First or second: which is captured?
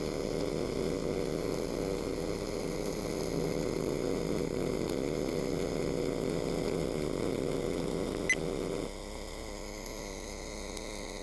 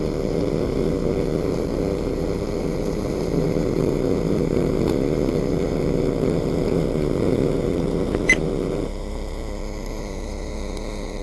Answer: first